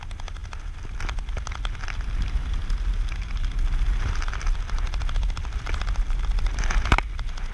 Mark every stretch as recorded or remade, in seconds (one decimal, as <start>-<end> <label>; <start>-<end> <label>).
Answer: 0.0-7.5 recorded